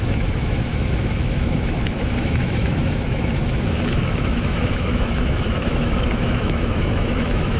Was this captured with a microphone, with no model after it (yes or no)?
no